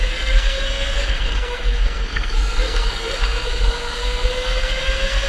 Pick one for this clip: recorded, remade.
remade